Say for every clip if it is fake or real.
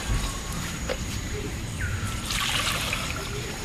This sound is fake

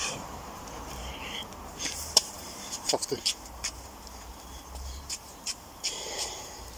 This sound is fake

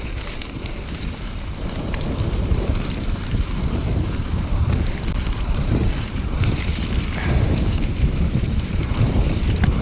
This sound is fake